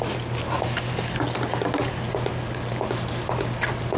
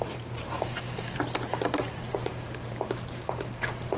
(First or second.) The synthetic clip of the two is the second